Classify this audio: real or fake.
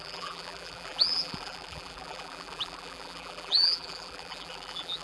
fake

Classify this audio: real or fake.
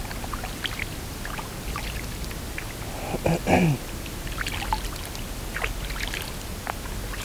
real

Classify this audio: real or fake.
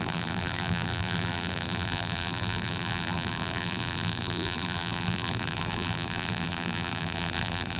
fake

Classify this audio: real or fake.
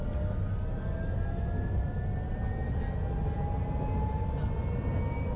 real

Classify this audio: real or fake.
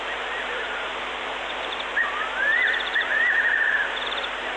fake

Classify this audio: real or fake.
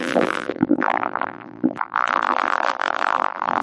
fake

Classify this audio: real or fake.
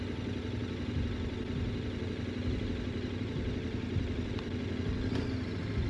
real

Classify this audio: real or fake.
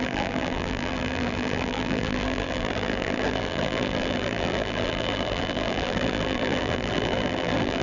fake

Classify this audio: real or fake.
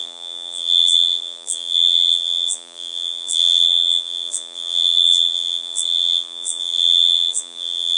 fake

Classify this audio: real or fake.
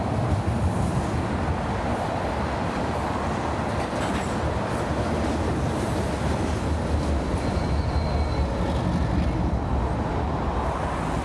real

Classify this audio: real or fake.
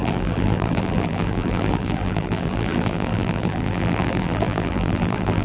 fake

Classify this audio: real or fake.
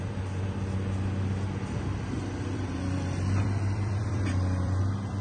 fake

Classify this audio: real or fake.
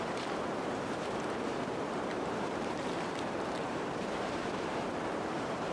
fake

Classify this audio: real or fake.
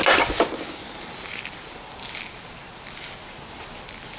real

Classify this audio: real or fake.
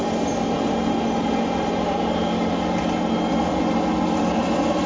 real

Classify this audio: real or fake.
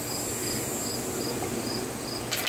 real